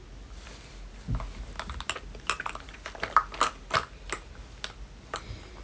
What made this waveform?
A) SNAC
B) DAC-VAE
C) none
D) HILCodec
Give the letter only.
C